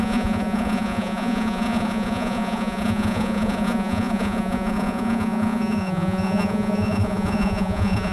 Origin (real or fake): fake